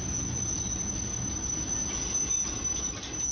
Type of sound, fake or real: real